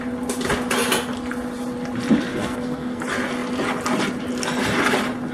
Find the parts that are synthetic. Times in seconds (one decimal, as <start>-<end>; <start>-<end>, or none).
2.3-3.0